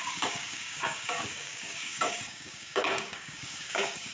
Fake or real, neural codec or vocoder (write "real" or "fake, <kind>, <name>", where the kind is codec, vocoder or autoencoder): fake, codec, DAC